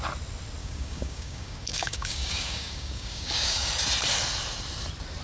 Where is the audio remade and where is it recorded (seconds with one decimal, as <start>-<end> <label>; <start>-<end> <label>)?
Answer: 0.0-0.6 recorded; 0.6-3.7 remade; 3.7-5.2 recorded